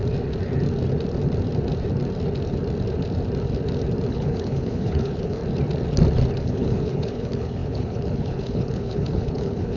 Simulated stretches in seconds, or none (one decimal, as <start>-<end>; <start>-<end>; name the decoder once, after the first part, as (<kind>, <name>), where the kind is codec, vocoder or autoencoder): 4.1-5.4 (codec, HILCodec); 6.4-9.8